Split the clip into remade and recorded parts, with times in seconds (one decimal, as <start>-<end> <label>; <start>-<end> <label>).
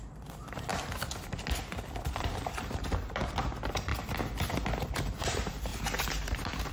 0.0-0.7 remade; 0.7-2.2 recorded; 2.2-3.9 remade; 3.9-4.8 recorded; 4.8-6.7 remade